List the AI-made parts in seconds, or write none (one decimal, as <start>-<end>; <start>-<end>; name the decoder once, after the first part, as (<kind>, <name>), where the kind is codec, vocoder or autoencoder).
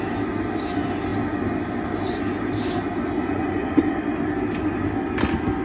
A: 3.2-3.8 (vocoder, Vocos)